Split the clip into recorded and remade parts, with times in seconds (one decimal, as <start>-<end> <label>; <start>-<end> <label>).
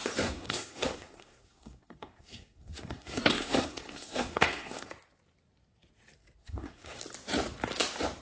0.0-4.9 remade; 4.9-6.4 recorded; 6.4-7.0 remade; 7.0-8.2 recorded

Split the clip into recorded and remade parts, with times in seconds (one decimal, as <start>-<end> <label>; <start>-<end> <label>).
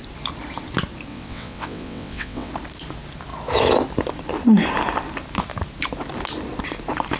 0.0-1.1 recorded; 1.1-2.5 remade; 2.5-7.2 recorded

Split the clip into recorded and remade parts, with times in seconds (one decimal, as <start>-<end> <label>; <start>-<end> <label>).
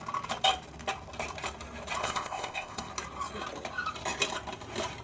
0.0-2.0 recorded; 2.0-2.9 remade; 2.9-5.0 recorded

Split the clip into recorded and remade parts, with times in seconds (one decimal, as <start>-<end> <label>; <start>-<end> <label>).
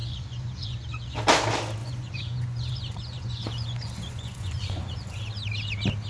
0.0-1.2 remade; 1.2-1.8 recorded; 1.8-5.2 remade; 5.2-6.1 recorded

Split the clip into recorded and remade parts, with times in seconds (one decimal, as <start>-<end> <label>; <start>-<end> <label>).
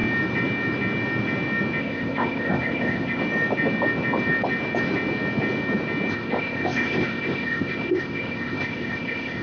0.0-1.8 recorded; 1.8-3.2 remade; 3.2-6.1 recorded; 6.1-9.4 remade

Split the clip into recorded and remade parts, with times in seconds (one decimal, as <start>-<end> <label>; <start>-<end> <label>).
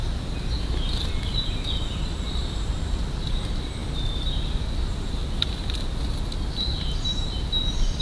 0.0-2.3 recorded; 2.3-3.8 remade; 3.8-4.8 recorded; 4.8-5.2 remade; 5.2-8.0 recorded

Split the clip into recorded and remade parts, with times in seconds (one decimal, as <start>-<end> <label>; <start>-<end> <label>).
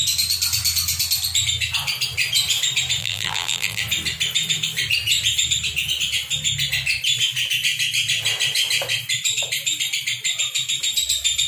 0.0-3.0 recorded; 3.0-3.8 remade; 3.8-11.5 recorded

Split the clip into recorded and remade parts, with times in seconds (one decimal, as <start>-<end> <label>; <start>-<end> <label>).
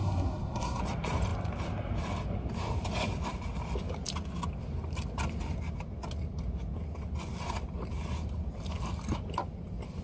0.0-0.8 remade; 0.8-10.0 recorded